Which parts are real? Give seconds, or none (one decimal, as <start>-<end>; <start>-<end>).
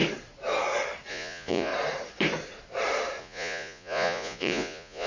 0.0-1.1; 1.7-3.2